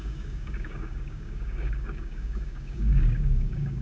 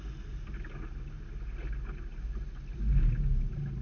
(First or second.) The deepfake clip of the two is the first